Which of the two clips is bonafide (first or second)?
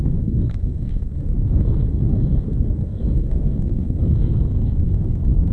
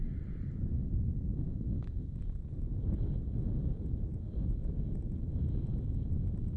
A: second